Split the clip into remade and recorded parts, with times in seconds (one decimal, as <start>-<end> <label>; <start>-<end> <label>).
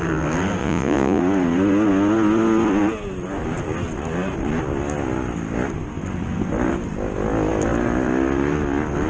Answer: 0.0-0.6 recorded; 0.6-1.2 remade; 1.2-9.1 recorded